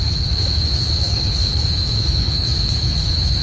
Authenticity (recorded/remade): remade